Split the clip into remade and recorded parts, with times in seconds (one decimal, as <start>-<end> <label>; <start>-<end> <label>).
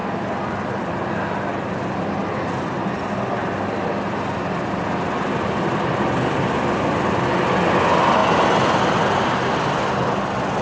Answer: 0.0-10.6 recorded